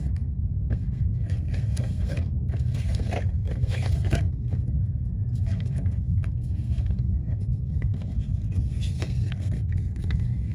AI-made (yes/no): yes